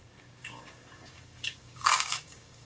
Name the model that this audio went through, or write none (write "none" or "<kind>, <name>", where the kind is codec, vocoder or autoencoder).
codec, DAC